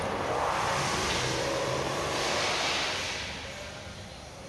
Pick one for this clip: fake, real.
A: real